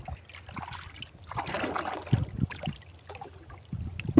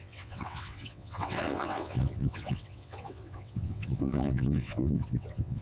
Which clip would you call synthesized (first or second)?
second